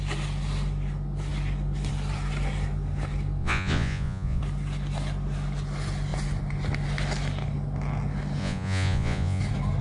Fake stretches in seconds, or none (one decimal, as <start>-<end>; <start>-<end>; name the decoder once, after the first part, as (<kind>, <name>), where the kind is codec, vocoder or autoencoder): 3.4-4.4 (vocoder, Vocos); 8.4-9.4